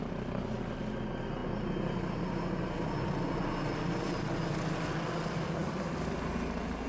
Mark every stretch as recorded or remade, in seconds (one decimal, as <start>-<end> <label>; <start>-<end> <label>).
0.0-6.9 recorded